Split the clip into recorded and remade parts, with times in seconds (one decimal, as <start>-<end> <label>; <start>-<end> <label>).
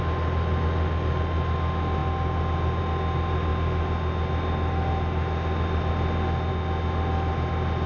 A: 0.0-7.9 recorded